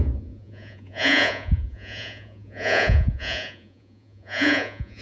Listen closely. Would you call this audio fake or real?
fake